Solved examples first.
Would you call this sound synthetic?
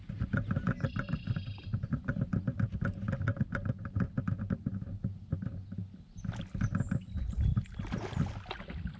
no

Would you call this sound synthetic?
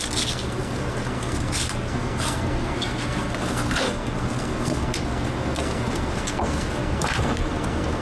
yes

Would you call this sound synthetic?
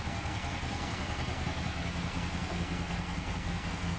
yes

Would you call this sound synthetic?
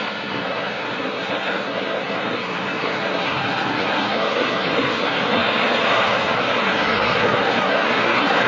yes